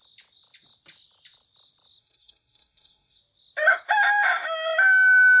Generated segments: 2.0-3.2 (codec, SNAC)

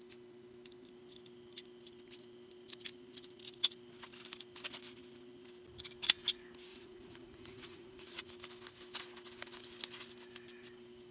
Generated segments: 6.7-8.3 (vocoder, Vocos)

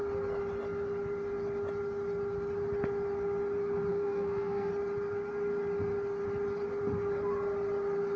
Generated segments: 3.9-4.7 (codec, SNAC)

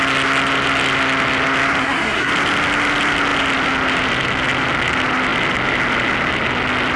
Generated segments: 1.8-2.3 (codec, SNAC)